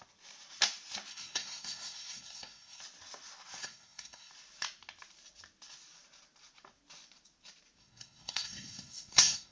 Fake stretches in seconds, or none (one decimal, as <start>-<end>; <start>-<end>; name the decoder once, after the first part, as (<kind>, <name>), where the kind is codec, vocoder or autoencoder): 1.1-2.8 (codec, SNAC); 3.6-4.3; 7.8-9.5